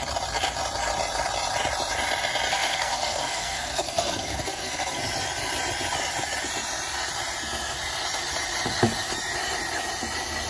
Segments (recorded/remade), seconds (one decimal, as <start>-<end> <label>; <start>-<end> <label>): 0.0-2.5 recorded; 2.5-5.0 remade; 5.0-10.5 recorded